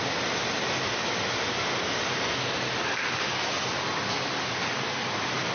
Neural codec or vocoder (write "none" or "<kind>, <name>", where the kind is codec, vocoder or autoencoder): none